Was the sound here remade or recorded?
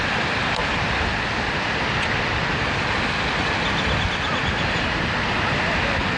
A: recorded